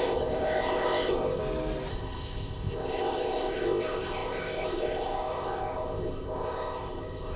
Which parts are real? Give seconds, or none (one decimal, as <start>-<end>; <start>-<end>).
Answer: 1.4-1.9